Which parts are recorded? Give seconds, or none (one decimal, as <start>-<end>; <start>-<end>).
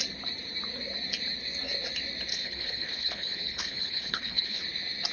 0.0-2.3; 4.6-5.1